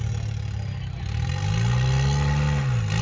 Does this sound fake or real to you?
real